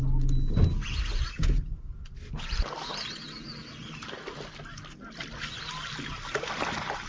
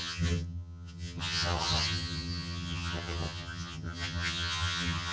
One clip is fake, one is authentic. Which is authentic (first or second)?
first